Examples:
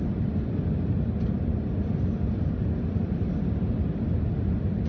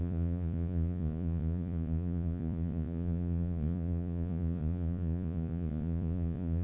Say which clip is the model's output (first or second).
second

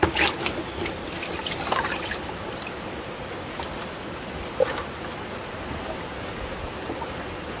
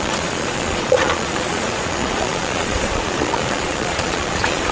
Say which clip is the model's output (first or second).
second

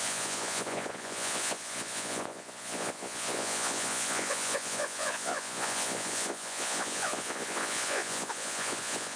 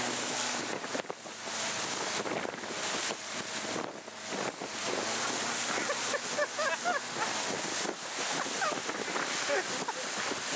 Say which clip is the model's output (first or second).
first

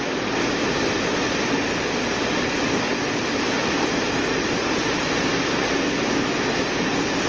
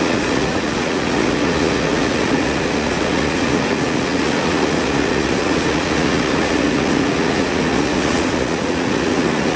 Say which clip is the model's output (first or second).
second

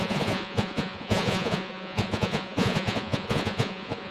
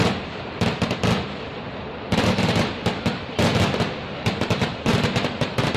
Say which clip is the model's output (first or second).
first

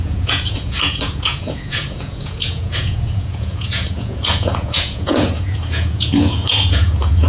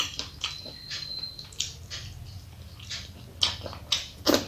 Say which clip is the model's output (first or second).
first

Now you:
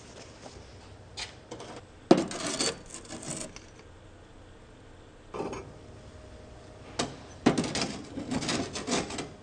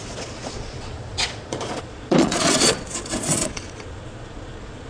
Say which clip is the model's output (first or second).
second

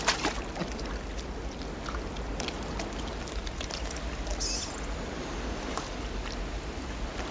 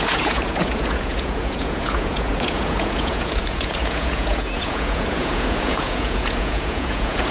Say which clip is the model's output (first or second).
second